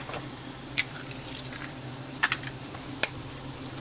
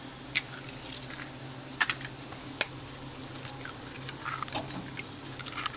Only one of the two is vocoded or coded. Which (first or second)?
first